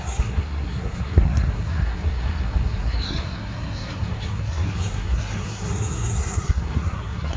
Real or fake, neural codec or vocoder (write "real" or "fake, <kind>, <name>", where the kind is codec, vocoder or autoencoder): fake, codec, SNAC